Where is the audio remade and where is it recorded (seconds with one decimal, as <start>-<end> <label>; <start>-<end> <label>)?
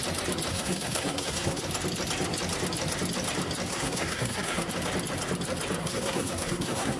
0.0-0.5 recorded; 0.5-1.6 remade; 1.6-3.7 recorded; 3.7-4.7 remade; 4.7-5.8 recorded; 5.8-7.0 remade